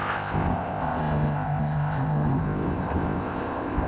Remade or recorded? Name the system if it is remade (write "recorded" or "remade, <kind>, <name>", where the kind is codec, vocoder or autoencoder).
remade, codec, ZipCodec